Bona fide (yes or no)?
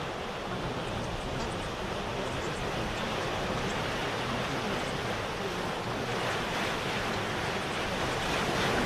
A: yes